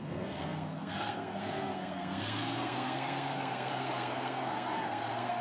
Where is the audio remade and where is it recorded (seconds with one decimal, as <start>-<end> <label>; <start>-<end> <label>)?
0.0-5.4 remade

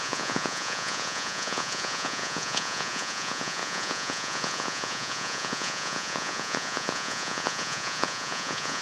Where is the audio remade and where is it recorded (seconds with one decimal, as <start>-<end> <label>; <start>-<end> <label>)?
0.0-8.8 remade

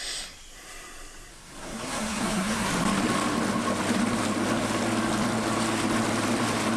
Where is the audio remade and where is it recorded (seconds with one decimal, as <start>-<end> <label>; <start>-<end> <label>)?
0.0-1.3 recorded; 1.3-2.7 remade; 2.7-6.8 recorded

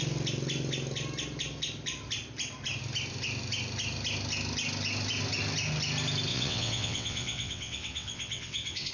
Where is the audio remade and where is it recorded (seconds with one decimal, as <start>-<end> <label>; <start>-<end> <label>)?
0.0-6.3 recorded; 6.3-8.9 remade

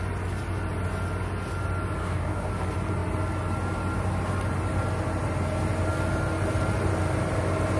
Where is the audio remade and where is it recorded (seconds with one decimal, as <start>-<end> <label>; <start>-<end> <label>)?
0.0-2.0 recorded; 2.0-2.5 remade; 2.5-7.8 recorded

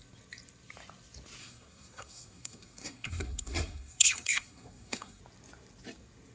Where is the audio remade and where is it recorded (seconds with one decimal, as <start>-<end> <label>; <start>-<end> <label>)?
0.0-1.4 recorded; 1.4-5.2 remade; 5.2-6.3 recorded

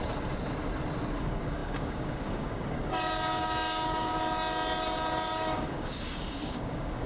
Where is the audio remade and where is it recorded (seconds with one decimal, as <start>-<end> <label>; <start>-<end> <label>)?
0.0-1.2 recorded; 1.2-4.1 remade; 4.1-5.3 recorded; 5.3-7.1 remade